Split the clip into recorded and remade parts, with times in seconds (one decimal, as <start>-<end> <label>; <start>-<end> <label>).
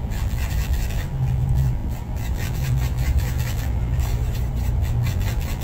0.0-4.2 remade; 4.2-4.8 recorded; 4.8-5.6 remade